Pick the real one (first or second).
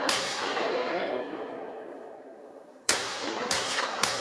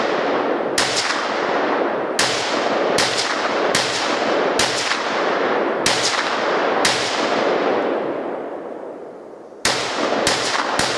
second